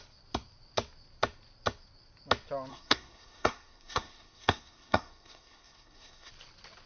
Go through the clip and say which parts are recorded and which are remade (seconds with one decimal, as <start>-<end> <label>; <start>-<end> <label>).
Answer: 0.0-2.7 recorded; 2.7-6.3 remade; 6.3-6.9 recorded